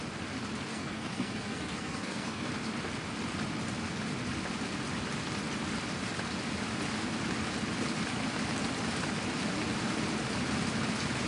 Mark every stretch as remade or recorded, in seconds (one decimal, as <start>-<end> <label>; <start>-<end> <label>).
0.0-0.7 recorded; 0.7-2.5 remade; 2.5-11.3 recorded